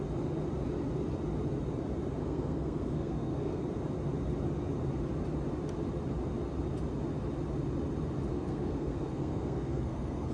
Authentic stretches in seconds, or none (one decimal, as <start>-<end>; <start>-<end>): 0.0-2.2; 3.6-8.3